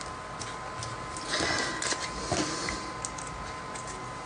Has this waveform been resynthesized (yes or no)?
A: no